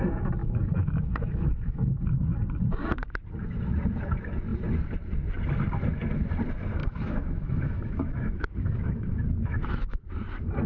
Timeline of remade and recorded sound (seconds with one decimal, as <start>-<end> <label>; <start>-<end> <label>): 0.0-0.4 recorded; 0.4-2.0 remade; 2.0-6.8 recorded; 6.8-10.1 remade; 10.1-10.7 recorded